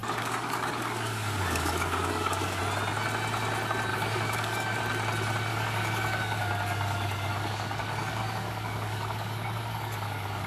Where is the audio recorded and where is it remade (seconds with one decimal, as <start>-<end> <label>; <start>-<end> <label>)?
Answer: 0.0-2.6 remade; 2.6-3.9 recorded; 3.9-4.8 remade; 4.8-5.5 recorded; 5.5-10.5 remade